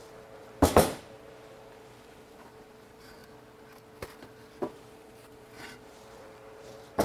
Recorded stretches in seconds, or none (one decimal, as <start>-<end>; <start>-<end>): 3.2-4.7